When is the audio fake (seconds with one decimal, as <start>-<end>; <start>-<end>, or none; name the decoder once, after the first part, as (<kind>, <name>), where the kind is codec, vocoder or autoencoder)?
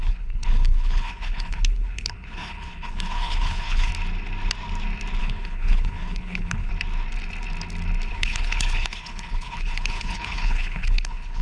0.0-3.9 (codec, HILCodec); 5.2-6.7; 8.1-11.4